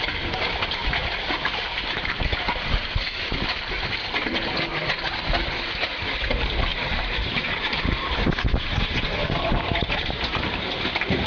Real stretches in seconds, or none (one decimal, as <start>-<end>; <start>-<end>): 0.0-6.7; 10.4-11.3

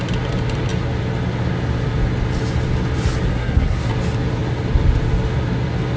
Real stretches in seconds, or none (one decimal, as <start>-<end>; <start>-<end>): 0.0-3.3; 3.9-6.0

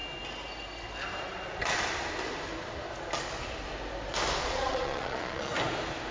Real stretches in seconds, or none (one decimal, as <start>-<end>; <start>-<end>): 0.0-4.4; 5.5-6.1

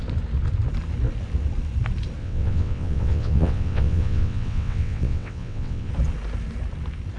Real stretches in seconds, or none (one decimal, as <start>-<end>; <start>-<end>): 0.0-2.2; 5.9-7.2

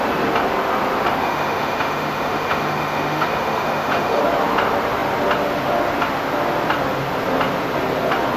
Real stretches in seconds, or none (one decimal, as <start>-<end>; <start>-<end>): 0.0-1.2; 4.2-8.4

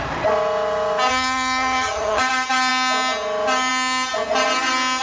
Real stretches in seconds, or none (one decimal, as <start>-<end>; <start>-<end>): 0.0-1.1; 2.2-5.0

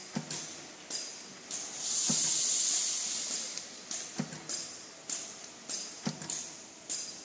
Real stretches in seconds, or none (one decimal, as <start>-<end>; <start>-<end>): 0.0-7.2

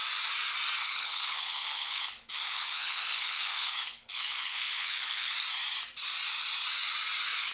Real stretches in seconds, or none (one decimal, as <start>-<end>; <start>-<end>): 0.0-0.8; 5.3-7.5